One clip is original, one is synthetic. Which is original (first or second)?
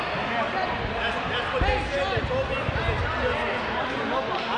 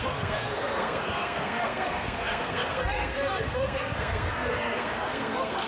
first